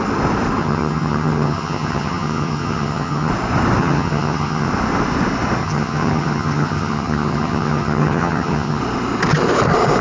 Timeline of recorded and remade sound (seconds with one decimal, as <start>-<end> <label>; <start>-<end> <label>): 0.0-0.6 recorded; 0.6-3.3 remade; 3.3-3.8 recorded; 3.8-4.7 remade; 4.7-5.6 recorded; 5.6-8.8 remade; 8.8-10.0 recorded